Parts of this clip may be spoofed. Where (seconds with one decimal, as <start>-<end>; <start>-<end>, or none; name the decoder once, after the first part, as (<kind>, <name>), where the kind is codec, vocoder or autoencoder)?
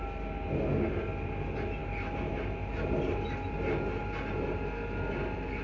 none